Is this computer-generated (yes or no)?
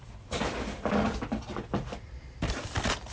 yes